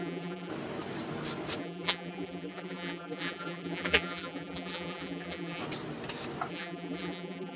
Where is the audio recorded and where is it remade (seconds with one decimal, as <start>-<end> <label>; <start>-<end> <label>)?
0.0-0.5 remade; 0.5-1.6 recorded; 1.6-5.6 remade; 5.6-6.5 recorded; 6.5-7.6 remade